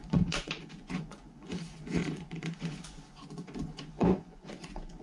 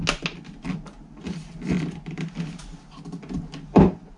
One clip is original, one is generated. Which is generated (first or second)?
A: first